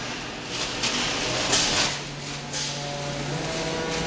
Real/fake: real